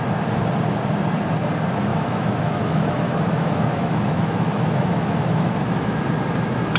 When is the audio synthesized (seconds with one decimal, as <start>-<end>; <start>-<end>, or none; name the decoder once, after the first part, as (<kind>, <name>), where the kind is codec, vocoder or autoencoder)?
1.9-6.0 (autoencoder, DAC-VAE)